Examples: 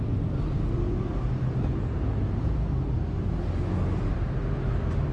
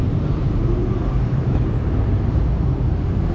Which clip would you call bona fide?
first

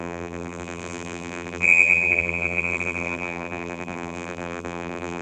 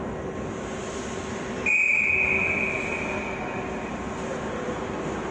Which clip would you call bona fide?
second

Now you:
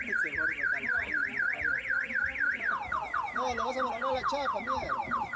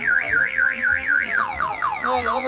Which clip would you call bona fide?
first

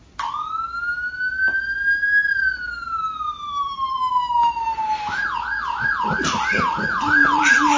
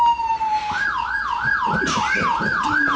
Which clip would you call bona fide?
first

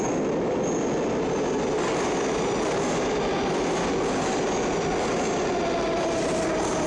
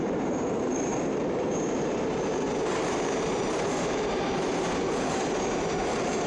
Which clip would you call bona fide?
first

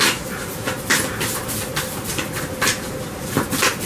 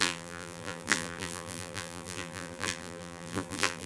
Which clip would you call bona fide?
first